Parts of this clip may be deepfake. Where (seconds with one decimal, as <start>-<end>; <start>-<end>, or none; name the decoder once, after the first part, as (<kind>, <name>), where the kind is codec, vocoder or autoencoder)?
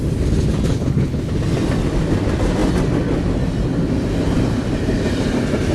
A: 0.7-1.3 (codec, HILCodec)